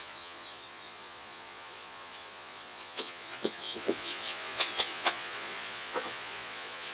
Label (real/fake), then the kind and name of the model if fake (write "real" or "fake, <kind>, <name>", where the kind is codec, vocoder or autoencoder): fake, vocoder, Vocos